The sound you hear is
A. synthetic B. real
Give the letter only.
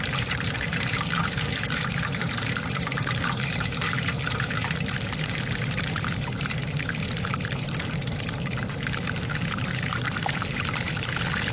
A